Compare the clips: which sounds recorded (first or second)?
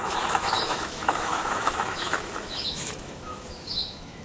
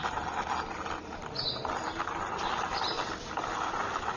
second